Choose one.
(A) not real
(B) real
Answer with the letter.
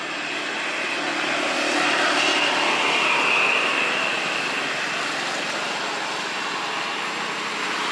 B